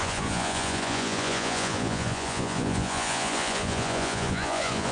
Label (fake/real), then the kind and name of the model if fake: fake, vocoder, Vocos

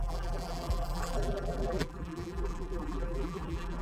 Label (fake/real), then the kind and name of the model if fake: fake, vocoder, BigVGAN v2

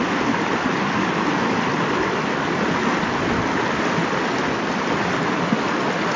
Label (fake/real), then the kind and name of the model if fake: real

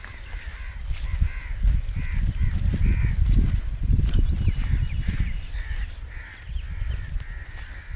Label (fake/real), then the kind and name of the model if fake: real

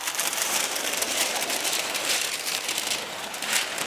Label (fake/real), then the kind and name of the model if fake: fake, vocoder, BigVGAN v2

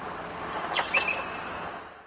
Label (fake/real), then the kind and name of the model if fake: real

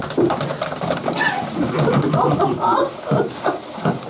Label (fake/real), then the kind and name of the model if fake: real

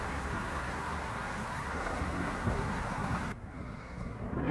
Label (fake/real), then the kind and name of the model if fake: fake, codec, SNAC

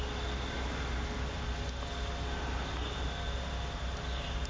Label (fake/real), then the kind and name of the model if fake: real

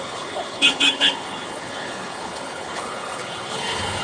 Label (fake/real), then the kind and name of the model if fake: fake, codec, HILCodec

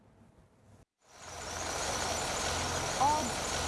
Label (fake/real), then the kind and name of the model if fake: real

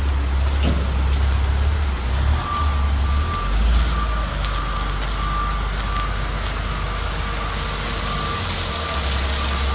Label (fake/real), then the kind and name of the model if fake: real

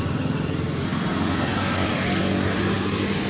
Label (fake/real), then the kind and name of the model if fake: real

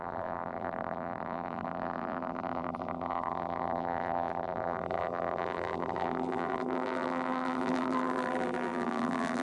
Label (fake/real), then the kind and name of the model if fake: fake, vocoder, BigVGAN v2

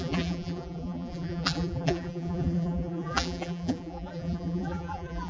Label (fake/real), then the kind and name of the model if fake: fake, vocoder, BigVGAN v2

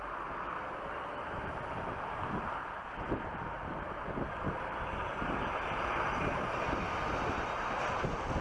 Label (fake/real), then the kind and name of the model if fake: real